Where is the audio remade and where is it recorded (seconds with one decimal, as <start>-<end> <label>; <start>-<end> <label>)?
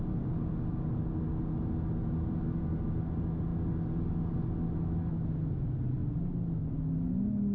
0.0-7.5 recorded